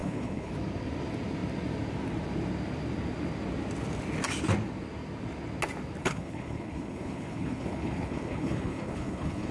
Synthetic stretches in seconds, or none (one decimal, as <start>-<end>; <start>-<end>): 0.0-0.5; 6.0-9.5